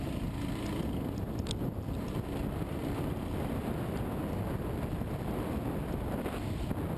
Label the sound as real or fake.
real